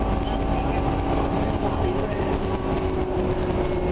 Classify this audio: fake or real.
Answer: real